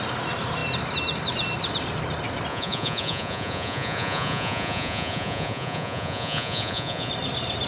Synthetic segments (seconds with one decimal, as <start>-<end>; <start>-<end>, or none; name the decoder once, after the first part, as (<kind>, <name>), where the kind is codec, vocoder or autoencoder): 2.5-7.1 (vocoder, Vocos)